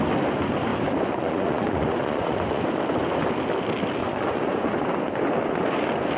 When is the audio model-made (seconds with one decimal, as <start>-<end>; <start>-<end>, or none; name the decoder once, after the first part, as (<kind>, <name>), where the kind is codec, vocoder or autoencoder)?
0.7-2.6 (vocoder, Vocos); 4.0-4.7